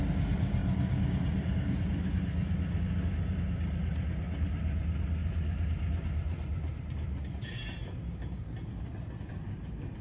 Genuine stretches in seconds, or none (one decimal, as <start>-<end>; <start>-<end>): 0.0-10.0